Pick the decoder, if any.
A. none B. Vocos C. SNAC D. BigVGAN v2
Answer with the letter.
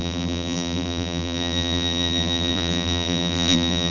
D